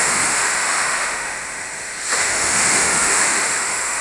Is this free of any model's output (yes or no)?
no